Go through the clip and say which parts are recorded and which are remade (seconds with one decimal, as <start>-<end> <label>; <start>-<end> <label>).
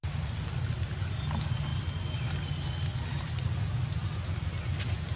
0.0-5.2 recorded